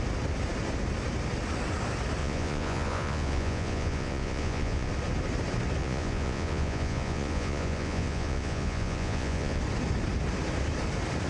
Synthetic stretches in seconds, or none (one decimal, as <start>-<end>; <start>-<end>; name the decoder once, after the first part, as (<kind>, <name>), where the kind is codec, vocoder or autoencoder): 2.2-4.9 (vocoder, Vocos); 5.8-9.6